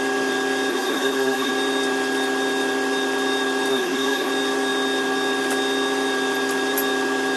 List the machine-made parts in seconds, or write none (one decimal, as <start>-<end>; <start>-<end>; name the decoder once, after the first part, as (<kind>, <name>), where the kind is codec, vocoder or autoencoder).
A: 0.7-1.5 (codec, SNAC); 3.7-4.3